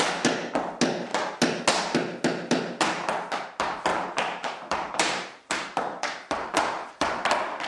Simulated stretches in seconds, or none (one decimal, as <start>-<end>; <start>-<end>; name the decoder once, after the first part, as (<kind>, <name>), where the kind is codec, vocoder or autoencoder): 3.9-6.9 (vocoder, BigVGAN v2)